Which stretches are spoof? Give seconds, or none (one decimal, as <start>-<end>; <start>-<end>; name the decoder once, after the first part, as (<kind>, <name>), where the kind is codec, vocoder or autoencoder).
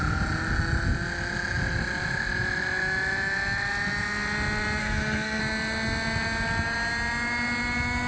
4.8-5.4 (codec, SNAC)